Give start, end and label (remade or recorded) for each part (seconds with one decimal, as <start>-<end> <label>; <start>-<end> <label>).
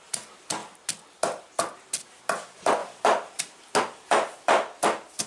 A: 0.0-2.8 recorded; 2.8-3.6 remade; 3.6-5.3 recorded